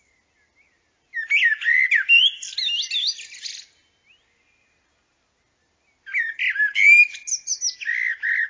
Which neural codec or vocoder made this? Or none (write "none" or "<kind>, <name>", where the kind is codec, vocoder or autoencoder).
none